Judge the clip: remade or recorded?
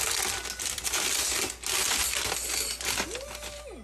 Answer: recorded